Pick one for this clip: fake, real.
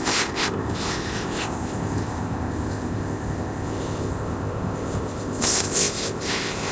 fake